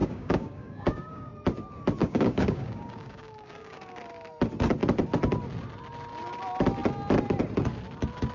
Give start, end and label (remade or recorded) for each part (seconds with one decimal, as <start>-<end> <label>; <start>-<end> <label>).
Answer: 0.0-1.3 remade; 1.3-2.0 recorded; 2.0-4.0 remade; 4.0-8.3 recorded